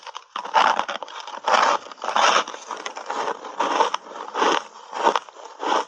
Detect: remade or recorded recorded